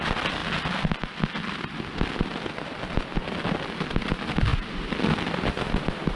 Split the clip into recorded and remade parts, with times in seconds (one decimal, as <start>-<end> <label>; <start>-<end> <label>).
0.0-6.2 recorded